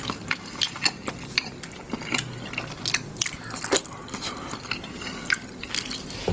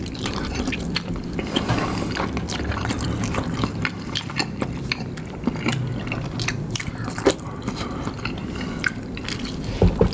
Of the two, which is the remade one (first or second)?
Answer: second